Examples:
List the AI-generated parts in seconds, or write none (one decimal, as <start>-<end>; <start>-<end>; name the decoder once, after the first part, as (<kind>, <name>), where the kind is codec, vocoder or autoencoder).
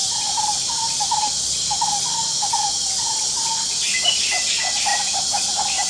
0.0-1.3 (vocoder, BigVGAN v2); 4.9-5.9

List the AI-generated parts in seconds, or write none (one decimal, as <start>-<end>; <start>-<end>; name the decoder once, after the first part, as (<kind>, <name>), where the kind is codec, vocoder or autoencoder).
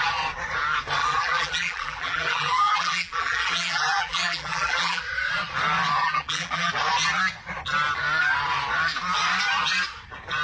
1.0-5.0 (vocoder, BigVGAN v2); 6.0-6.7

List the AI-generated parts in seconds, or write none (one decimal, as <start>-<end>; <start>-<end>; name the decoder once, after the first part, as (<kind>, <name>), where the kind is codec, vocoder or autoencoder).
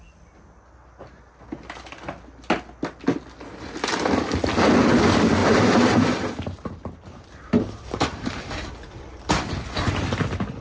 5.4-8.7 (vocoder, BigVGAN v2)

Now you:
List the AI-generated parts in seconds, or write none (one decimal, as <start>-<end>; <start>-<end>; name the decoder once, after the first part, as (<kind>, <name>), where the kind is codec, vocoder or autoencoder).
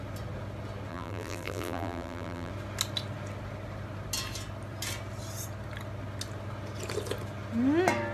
0.9-2.5 (vocoder, BigVGAN v2)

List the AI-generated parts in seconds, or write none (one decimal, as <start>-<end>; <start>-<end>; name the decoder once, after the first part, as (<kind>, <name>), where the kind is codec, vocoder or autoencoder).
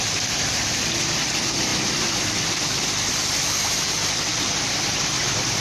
0.0-1.7 (vocoder, BigVGAN v2); 3.1-5.6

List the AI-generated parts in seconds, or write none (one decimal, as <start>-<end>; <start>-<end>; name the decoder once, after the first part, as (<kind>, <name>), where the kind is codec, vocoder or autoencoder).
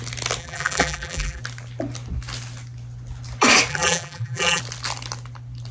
0.4-1.4 (vocoder, BigVGAN v2); 3.7-4.6